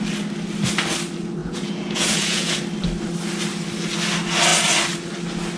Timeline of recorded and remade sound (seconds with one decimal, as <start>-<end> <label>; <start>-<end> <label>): 0.0-1.4 recorded; 1.4-2.6 remade; 2.6-5.6 recorded